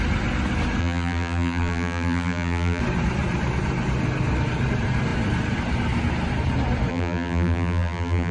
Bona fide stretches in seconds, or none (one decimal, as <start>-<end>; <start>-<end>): 0.0-0.8; 2.8-6.9